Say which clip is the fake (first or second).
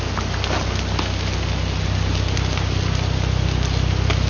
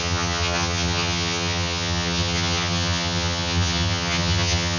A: second